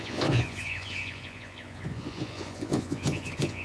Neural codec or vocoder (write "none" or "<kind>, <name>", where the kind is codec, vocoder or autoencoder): vocoder, Vocos